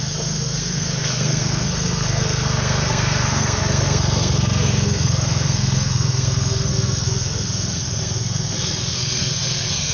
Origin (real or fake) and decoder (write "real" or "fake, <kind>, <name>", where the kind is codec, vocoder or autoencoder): fake, codec, SNAC